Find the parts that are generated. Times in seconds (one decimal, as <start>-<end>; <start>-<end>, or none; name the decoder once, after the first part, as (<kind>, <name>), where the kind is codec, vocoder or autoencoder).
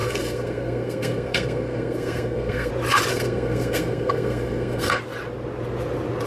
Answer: 0.0-2.7 (codec, SNAC); 3.1-5.0